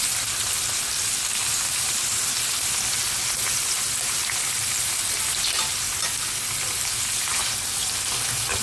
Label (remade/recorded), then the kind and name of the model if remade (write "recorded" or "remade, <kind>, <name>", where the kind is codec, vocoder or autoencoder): recorded